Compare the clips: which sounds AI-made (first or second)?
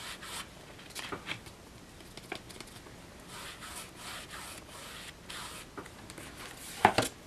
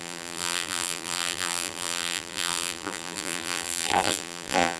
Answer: second